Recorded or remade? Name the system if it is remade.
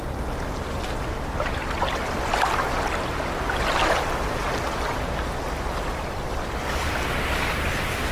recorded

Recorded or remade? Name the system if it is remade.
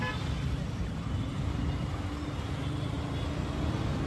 recorded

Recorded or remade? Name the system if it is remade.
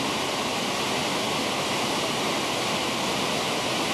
recorded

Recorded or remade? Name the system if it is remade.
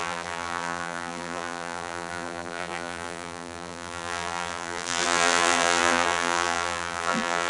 remade, vocoder, BigVGAN v2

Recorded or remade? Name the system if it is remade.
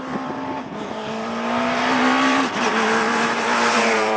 remade, vocoder, BigVGAN v2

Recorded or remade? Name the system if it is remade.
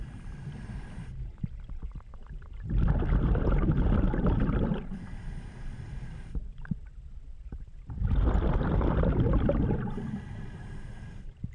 remade, vocoder, BigVGAN v2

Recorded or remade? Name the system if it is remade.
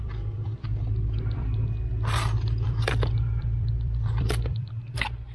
remade, vocoder, BigVGAN v2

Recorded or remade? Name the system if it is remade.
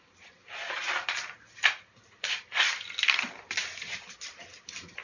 remade, vocoder, BigVGAN v2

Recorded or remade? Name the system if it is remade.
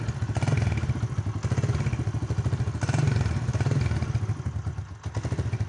recorded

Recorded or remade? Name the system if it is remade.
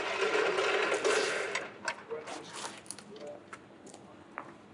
recorded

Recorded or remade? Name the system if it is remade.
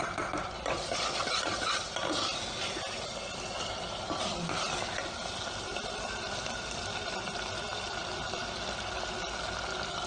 recorded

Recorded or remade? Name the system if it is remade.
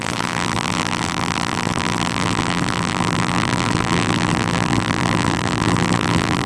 remade, vocoder, BigVGAN v2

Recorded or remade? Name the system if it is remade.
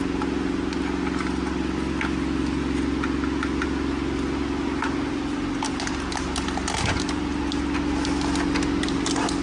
recorded